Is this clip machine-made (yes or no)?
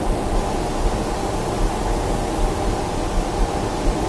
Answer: no